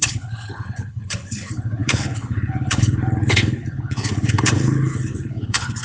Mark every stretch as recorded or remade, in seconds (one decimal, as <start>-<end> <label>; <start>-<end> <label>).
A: 0.0-5.8 remade